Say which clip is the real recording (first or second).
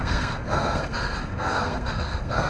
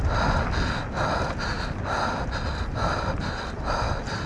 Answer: second